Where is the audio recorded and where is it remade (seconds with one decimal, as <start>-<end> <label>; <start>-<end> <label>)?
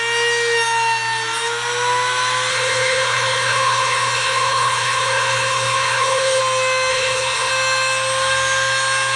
0.0-2.5 recorded; 2.5-6.4 remade; 6.4-6.9 recorded; 6.9-7.5 remade; 7.5-9.2 recorded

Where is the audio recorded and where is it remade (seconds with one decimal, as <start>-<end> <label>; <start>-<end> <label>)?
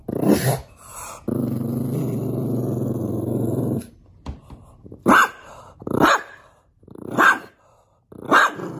0.0-5.2 recorded; 5.2-7.4 remade; 7.4-8.8 recorded